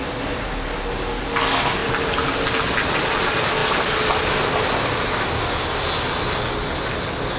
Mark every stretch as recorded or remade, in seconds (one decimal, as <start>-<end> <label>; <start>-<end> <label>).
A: 0.0-7.4 recorded